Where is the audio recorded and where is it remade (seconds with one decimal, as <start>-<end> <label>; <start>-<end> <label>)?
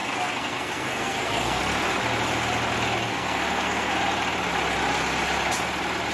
0.0-1.6 remade; 1.6-3.1 recorded; 3.1-3.9 remade; 3.9-6.1 recorded